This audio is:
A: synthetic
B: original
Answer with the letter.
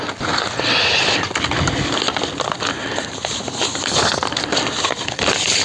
B